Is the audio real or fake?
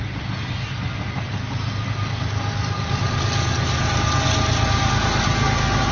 real